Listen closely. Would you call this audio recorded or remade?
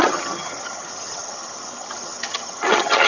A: remade